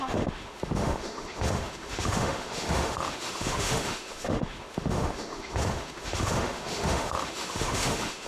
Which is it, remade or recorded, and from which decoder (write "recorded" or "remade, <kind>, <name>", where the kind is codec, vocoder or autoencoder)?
remade, autoencoder, DAC-VAE